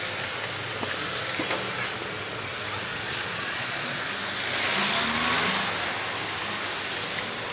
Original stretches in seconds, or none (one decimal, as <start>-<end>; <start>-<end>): 0.0-2.9; 4.0-7.5